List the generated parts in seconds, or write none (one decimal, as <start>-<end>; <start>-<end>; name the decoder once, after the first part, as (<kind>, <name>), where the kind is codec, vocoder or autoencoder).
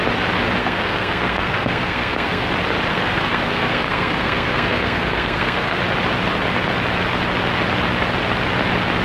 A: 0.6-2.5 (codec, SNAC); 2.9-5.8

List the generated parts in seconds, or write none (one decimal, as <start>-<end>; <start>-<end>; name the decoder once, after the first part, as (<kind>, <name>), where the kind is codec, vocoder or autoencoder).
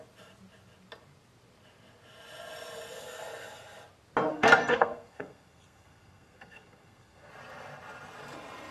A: 4.3-7.3 (codec, SNAC)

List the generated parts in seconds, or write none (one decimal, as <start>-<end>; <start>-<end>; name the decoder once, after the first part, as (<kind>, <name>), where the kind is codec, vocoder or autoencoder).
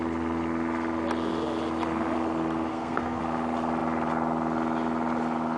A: 2.7-3.2 (codec, SNAC)